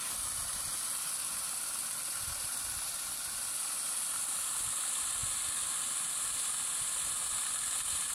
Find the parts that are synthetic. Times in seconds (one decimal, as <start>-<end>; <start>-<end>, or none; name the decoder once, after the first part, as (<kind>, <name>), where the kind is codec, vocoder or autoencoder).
5.2-5.9 (vocoder, BigVGAN v2)